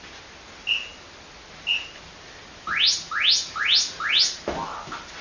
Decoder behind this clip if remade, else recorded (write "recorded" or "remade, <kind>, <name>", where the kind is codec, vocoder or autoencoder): recorded